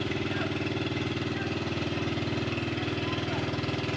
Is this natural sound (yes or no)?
yes